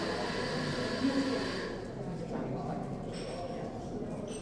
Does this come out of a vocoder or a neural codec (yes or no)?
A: no